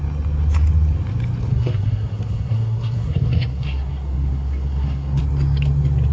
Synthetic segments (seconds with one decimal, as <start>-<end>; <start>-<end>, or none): 1.5-5.2